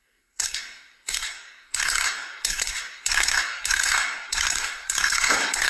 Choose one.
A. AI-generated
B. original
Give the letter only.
A